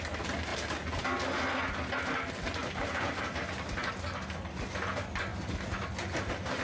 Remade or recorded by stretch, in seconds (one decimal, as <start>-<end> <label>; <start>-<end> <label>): 0.0-6.6 recorded